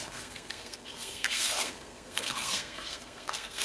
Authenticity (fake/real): fake